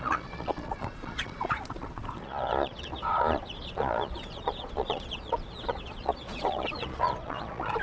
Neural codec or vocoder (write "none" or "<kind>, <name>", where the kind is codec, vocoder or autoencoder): vocoder, Vocos